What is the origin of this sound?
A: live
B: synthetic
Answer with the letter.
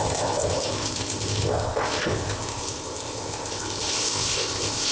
B